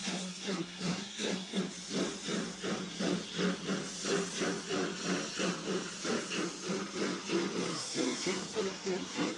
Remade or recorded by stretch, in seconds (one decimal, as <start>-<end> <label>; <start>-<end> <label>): 0.0-1.6 remade; 1.6-7.7 recorded; 7.7-9.4 remade